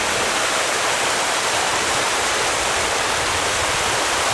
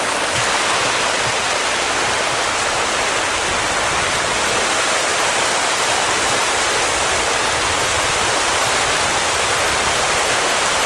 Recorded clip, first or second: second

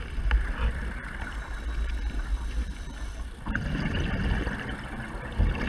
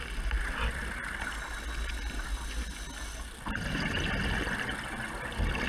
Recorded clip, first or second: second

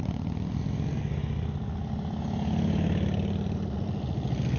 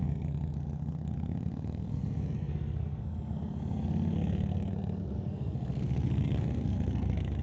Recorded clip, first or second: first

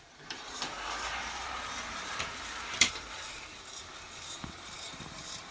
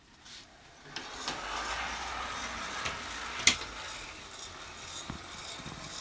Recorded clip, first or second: second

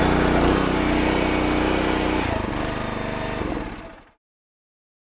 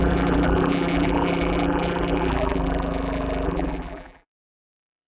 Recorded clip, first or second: first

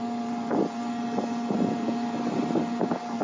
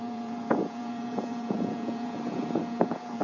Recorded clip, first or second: first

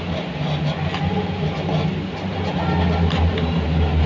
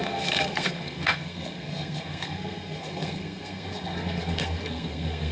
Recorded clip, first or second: first